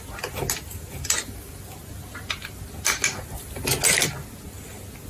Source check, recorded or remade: recorded